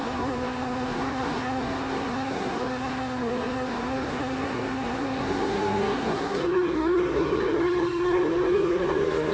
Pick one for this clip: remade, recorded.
remade